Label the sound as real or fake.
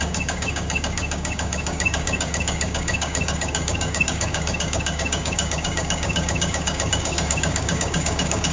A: fake